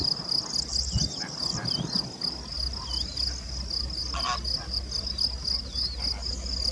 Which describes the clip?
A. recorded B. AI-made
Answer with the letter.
A